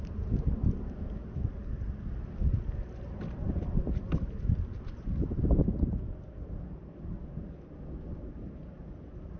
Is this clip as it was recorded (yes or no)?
yes